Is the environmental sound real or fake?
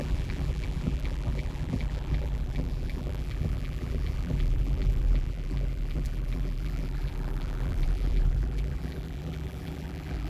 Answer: fake